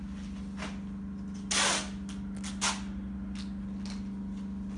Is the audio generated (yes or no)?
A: no